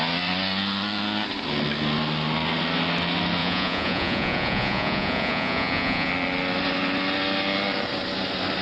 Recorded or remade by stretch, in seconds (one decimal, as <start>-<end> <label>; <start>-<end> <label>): 0.0-3.4 recorded; 3.4-6.1 remade; 6.1-8.6 recorded

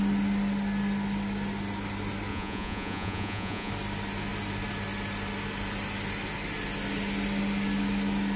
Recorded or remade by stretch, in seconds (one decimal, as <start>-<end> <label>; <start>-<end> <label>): 0.0-2.3 recorded; 2.3-3.7 remade; 3.7-8.4 recorded

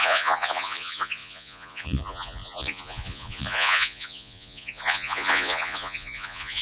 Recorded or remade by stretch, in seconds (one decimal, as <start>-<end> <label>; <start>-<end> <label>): 0.0-6.6 remade

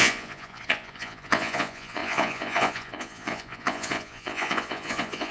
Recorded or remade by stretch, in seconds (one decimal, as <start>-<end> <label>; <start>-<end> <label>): 0.0-5.3 remade

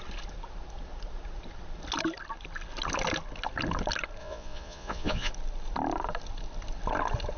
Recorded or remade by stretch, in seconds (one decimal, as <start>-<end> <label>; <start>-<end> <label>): 0.0-4.2 recorded; 4.2-5.3 remade; 5.3-7.4 recorded